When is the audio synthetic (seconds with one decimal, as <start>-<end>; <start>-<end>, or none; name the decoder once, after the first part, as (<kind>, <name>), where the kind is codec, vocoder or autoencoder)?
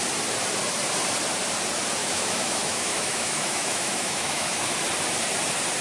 2.0-4.7 (autoencoder, DAC-VAE)